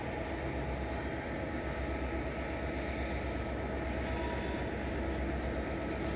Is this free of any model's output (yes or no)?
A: yes